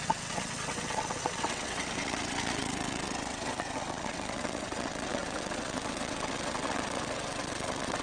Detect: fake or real fake